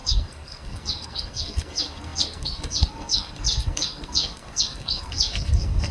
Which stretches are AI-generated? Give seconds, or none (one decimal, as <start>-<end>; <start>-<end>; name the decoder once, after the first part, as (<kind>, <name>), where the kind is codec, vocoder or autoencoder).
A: 0.0-5.9 (codec, SNAC)